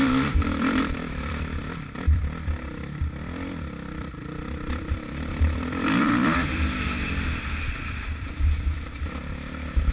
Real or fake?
fake